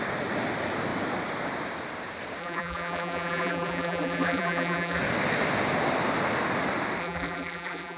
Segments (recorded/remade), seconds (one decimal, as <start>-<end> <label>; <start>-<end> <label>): 0.0-2.4 recorded; 2.4-5.0 remade; 5.0-7.0 recorded; 7.0-8.0 remade